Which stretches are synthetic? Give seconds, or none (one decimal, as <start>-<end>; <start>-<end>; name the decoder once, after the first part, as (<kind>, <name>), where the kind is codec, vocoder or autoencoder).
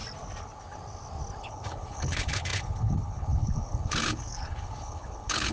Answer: 1.4-5.5 (codec, HILCodec)